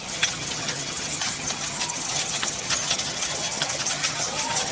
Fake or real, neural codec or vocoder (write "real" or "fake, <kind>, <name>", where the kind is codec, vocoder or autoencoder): fake, vocoder, HiFi-GAN